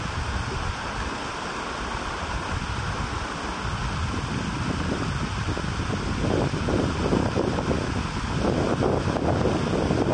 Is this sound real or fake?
real